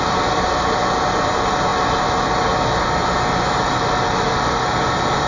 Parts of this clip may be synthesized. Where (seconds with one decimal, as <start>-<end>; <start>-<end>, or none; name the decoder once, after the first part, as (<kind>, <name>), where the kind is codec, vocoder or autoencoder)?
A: none

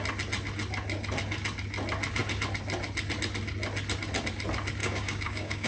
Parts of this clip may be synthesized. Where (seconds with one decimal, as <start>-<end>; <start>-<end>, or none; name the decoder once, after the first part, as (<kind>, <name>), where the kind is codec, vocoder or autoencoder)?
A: 4.8-5.7 (codec, DAC)